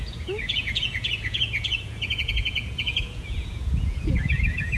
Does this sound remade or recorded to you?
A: remade